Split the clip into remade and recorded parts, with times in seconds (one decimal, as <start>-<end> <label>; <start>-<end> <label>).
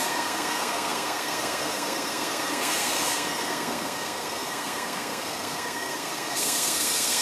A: 0.0-7.2 remade